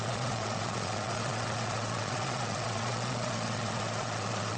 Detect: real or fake fake